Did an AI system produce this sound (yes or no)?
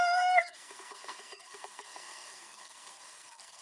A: yes